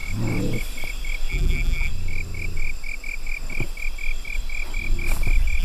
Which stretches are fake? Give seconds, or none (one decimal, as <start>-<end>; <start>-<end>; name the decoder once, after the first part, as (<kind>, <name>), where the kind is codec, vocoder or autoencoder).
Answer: 1.3-1.9 (vocoder, BigVGAN v2)